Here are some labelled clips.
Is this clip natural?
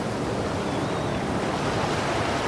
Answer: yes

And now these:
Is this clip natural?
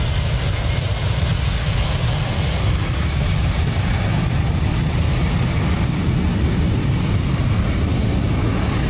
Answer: yes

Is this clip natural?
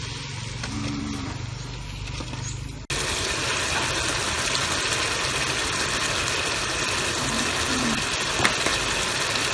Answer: yes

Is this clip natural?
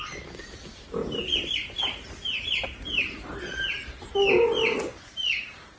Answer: yes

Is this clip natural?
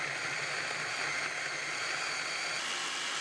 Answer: yes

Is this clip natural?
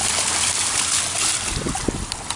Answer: yes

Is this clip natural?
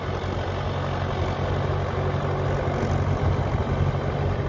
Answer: yes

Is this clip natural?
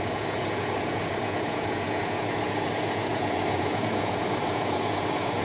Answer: no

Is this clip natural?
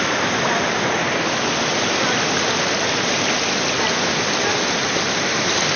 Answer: yes